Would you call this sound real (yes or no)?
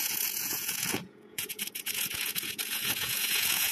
no